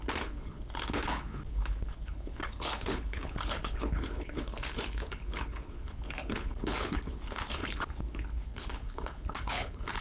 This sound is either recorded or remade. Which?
remade